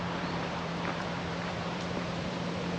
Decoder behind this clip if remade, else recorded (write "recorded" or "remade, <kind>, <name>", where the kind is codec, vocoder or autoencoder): remade, vocoder, BigVGAN v2